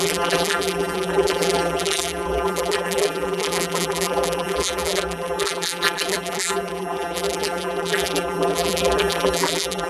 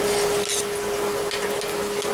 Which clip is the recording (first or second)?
second